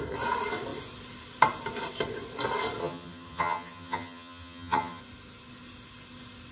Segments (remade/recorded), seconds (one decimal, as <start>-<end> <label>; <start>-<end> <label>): 0.0-2.8 recorded; 2.8-5.0 remade; 5.0-6.5 recorded